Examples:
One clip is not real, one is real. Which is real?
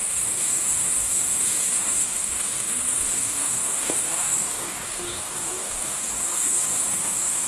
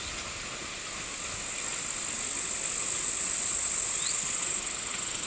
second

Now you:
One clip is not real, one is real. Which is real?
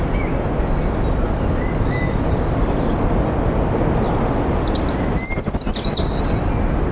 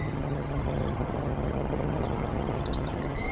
first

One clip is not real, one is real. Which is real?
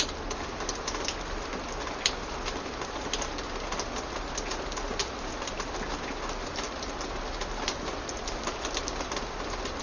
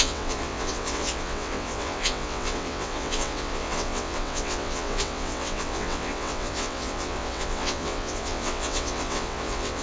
first